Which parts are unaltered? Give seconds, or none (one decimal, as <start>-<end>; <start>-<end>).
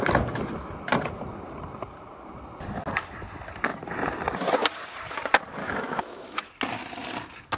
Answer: 0.0-5.6; 6.5-7.6